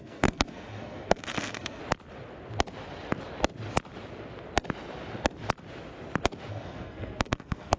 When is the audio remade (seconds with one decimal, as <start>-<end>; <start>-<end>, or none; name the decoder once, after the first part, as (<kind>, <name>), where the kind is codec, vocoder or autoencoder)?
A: 0.0-1.8 (codec, SNAC); 6.5-7.8